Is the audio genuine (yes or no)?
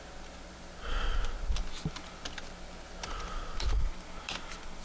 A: yes